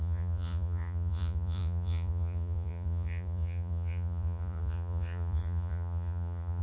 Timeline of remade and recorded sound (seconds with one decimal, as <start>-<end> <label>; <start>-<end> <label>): 0.0-6.6 remade